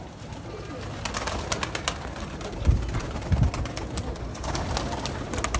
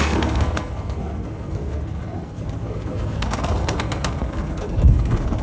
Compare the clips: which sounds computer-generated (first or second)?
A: second